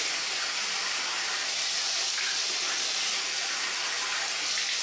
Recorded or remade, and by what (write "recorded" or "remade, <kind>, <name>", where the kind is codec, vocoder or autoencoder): recorded